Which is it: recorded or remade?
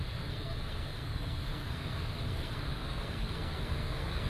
remade